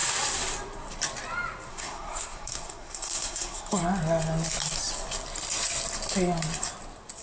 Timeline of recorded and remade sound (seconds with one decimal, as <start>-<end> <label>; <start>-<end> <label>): 0.0-1.7 recorded; 1.7-3.8 remade; 3.8-7.2 recorded